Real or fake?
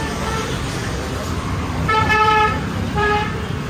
fake